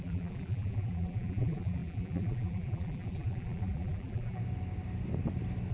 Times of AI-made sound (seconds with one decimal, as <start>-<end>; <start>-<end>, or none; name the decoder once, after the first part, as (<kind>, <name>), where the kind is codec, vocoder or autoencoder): 0.0-4.4 (vocoder, BigVGAN v2)